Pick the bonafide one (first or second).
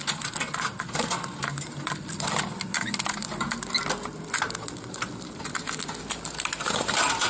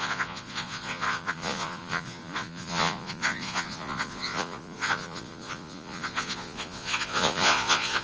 first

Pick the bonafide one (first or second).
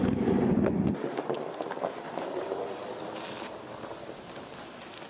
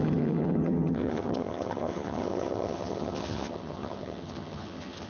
first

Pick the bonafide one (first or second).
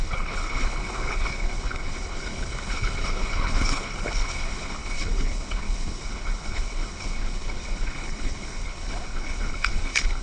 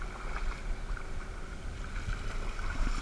second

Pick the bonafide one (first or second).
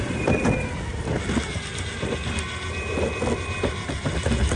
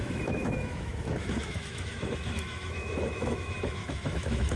first